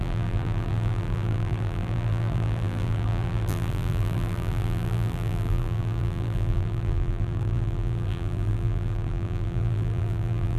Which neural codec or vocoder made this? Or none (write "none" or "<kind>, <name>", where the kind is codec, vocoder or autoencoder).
vocoder, BigVGAN v2